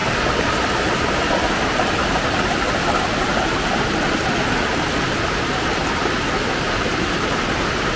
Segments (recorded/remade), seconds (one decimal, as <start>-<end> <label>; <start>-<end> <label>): 0.0-8.0 recorded